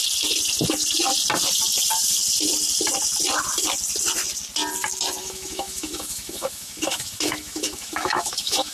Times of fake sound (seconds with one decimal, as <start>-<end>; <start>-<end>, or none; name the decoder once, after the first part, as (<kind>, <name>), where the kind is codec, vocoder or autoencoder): 5.2-8.7 (autoencoder, DAC-VAE)